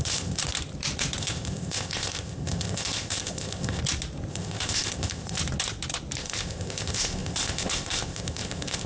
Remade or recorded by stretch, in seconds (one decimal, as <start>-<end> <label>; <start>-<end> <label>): 0.0-0.4 remade; 0.4-1.2 recorded; 1.2-3.8 remade; 3.8-4.3 recorded; 4.3-5.4 remade; 5.4-6.2 recorded; 6.2-8.9 remade